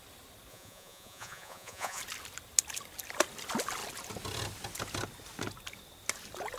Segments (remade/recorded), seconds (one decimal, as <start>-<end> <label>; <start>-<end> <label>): 0.0-0.5 recorded; 0.5-2.0 remade; 2.0-6.6 recorded